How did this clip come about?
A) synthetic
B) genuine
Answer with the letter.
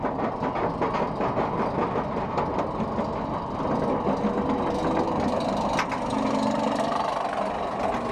B